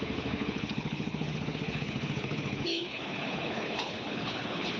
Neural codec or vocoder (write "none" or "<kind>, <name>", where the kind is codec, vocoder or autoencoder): codec, HILCodec